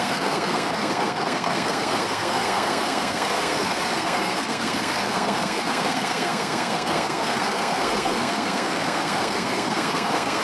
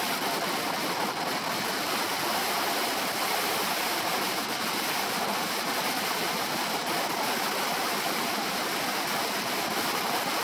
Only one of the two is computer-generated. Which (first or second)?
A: first